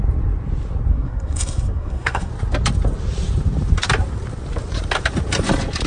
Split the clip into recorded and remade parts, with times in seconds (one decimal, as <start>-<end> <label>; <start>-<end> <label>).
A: 0.0-0.9 recorded; 0.9-2.3 remade; 2.3-5.9 recorded